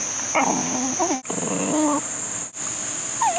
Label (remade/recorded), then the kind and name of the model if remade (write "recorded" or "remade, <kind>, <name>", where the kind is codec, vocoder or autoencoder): recorded